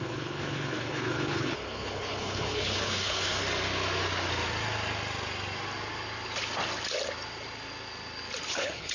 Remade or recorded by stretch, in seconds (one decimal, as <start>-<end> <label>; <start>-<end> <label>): 0.0-3.4 remade; 3.4-8.5 recorded; 8.5-8.9 remade

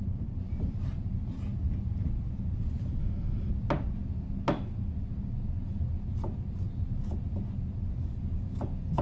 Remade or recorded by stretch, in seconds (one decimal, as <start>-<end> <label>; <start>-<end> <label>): 0.0-3.0 recorded; 3.0-3.5 remade; 3.5-9.0 recorded

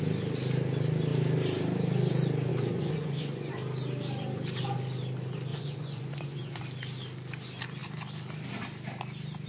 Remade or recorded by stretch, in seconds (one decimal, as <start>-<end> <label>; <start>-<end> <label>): 0.0-2.5 recorded; 2.5-3.5 remade; 3.5-5.5 recorded; 5.5-6.6 remade; 6.6-9.5 recorded

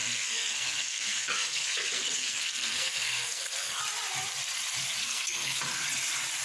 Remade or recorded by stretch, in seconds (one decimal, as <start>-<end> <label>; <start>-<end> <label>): 0.0-3.8 remade; 3.8-5.0 recorded; 5.0-5.6 remade; 5.6-6.4 recorded

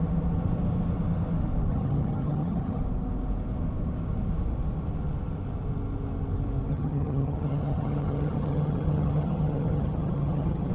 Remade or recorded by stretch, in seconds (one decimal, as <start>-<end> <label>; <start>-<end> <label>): 0.0-1.7 recorded; 1.7-2.8 remade; 2.8-6.7 recorded; 6.7-10.7 remade

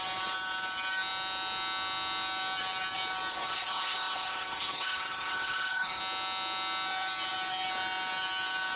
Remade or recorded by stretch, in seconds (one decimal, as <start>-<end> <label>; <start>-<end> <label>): 0.0-3.3 recorded; 3.3-6.0 remade; 6.0-8.8 recorded

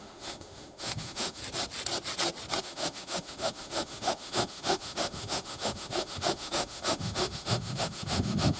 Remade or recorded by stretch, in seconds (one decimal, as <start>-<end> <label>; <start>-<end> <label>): 0.0-1.4 remade; 1.4-2.6 recorded; 2.6-8.6 remade

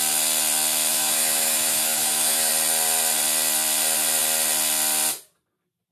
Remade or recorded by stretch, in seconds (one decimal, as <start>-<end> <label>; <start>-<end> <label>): 0.0-0.9 recorded; 0.9-2.5 remade; 2.5-5.9 recorded